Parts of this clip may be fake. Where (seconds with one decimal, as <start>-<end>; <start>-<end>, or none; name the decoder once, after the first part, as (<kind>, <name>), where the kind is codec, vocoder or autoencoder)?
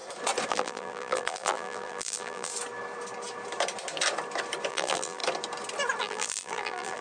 0.5-2.5 (vocoder, BigVGAN v2); 4.7-5.2; 6.0-7.0